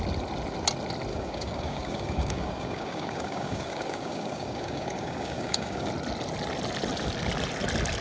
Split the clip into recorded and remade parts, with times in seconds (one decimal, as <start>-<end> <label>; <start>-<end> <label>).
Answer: 0.0-1.1 recorded; 1.1-5.9 remade; 5.9-8.0 recorded